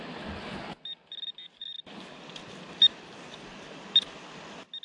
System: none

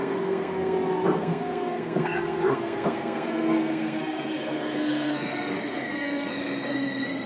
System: codec, SNAC